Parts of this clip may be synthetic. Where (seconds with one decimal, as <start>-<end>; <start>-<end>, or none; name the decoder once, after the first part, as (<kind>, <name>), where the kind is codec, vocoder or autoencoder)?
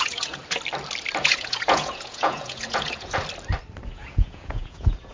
0.0-0.4 (vocoder, Vocos); 1.2-3.2; 3.9-5.1